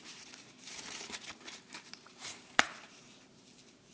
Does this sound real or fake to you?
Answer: fake